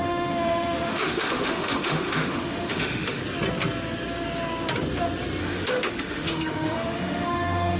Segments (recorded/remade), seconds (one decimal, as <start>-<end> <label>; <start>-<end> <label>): 0.0-3.2 remade; 3.2-5.4 recorded; 5.4-7.8 remade